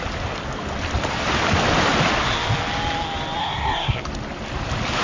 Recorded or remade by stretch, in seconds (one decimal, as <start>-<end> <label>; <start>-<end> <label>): 0.0-3.4 recorded; 3.4-4.0 remade; 4.0-5.0 recorded